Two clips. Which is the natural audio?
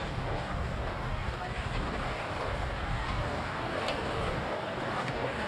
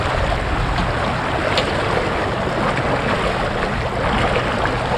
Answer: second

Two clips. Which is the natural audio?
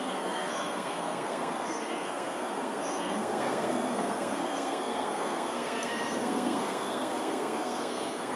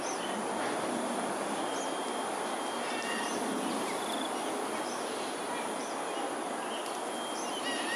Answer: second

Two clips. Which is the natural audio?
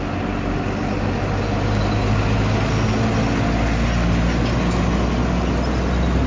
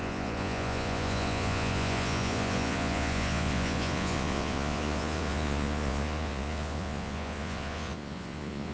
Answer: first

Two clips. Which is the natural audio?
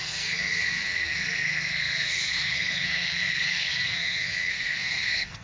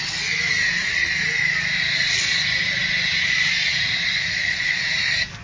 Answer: second